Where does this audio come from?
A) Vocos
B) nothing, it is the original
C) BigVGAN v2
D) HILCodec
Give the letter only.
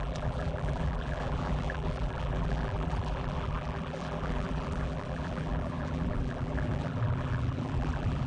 C